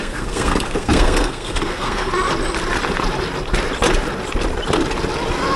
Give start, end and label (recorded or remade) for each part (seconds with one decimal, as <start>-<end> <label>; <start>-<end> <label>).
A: 0.0-2.1 remade; 2.1-5.6 recorded